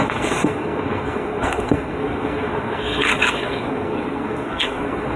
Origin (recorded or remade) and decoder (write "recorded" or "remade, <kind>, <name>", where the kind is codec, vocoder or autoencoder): remade, codec, SNAC